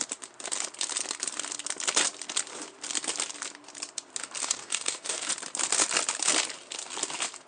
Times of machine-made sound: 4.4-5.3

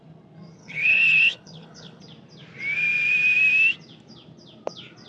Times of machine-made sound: 0.6-2.0

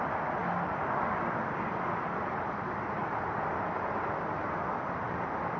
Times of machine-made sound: none

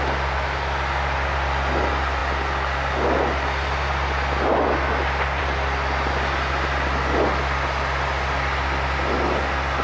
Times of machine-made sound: none

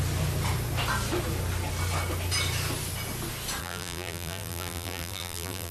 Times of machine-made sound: 3.6-5.7

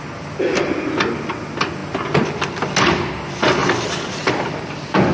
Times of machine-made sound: 3.6-4.5